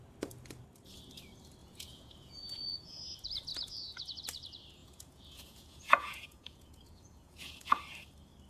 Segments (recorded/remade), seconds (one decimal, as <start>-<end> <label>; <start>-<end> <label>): 0.0-1.6 recorded; 1.6-3.0 remade; 3.0-3.5 recorded; 3.5-4.2 remade; 4.2-4.8 recorded; 4.8-7.8 remade; 7.8-8.5 recorded